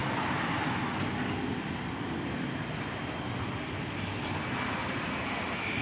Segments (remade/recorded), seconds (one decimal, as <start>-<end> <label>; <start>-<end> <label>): 0.0-0.6 remade; 0.6-1.5 recorded; 1.5-3.8 remade; 3.8-4.8 recorded; 4.8-5.8 remade